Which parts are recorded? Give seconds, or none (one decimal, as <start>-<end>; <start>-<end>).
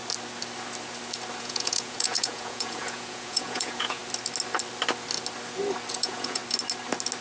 0.0-1.4; 4.0-5.9; 6.4-7.2